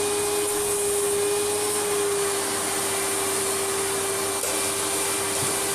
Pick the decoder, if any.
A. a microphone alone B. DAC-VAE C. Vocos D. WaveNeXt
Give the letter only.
A